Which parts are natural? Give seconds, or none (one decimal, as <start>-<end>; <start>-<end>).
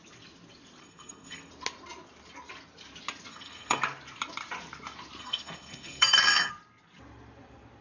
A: 0.0-0.8; 1.5-3.3; 3.8-5.2; 6.5-7.8